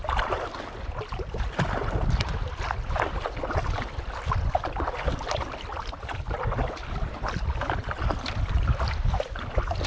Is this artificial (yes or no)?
no